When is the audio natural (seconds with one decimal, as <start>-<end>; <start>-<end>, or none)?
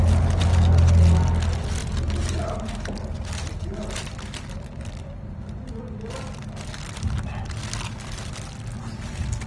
0.0-1.8; 2.9-9.5